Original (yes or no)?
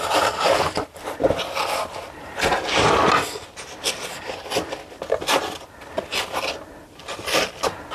yes